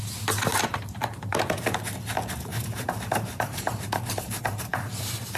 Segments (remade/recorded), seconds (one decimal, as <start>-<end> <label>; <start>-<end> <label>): 0.0-0.5 recorded; 0.5-1.8 remade; 1.8-2.5 recorded; 2.5-5.4 remade